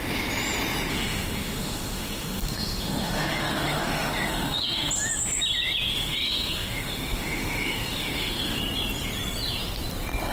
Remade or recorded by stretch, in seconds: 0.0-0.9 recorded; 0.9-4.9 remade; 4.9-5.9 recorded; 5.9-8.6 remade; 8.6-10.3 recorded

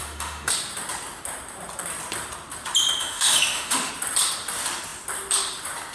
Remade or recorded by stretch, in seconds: 0.0-0.5 remade; 0.5-3.0 recorded; 3.0-3.9 remade; 3.9-5.9 recorded

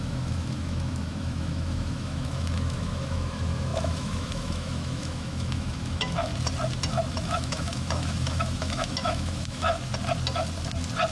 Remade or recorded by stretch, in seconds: 0.0-6.3 remade; 6.3-7.1 recorded; 7.1-9.9 remade; 9.9-11.1 recorded

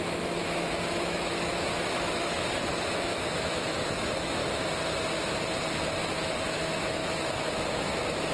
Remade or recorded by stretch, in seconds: 0.0-4.4 remade; 4.4-6.0 recorded; 6.0-8.3 remade

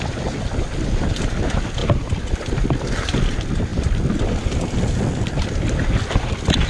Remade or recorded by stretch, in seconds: 0.0-6.7 recorded

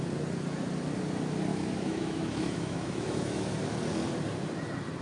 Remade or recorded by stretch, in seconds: 0.0-1.5 recorded; 1.5-3.5 remade; 3.5-5.0 recorded

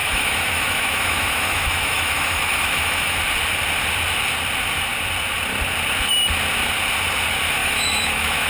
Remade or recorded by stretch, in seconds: 0.0-3.2 remade; 3.2-7.6 recorded; 7.6-8.5 remade

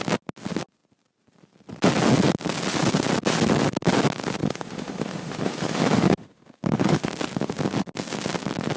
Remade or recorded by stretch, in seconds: 0.0-4.4 recorded; 4.4-7.1 remade; 7.1-8.8 recorded